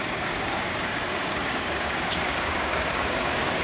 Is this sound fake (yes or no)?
yes